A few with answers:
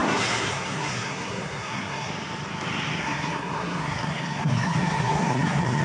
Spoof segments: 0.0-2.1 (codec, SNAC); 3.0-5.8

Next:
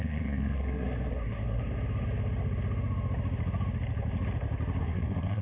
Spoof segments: 0.0-1.6 (codec, SNAC); 4.8-5.4

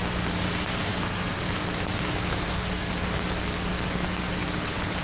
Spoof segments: 0.9-1.5 (codec, SNAC); 2.3-2.9

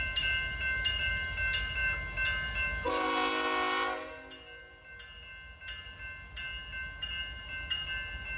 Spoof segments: none

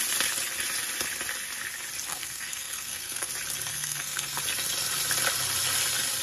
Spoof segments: 2.1-3.3 (codec, SNAC); 3.7-4.4